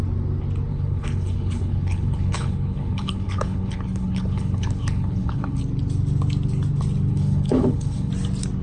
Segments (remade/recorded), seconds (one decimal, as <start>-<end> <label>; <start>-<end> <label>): 0.0-0.7 recorded; 0.7-5.6 remade; 5.6-7.1 recorded; 7.1-8.1 remade; 8.1-8.6 recorded